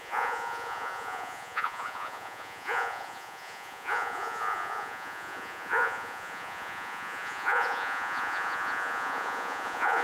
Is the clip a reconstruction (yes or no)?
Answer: yes